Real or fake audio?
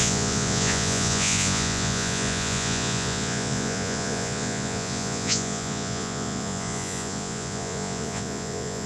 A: fake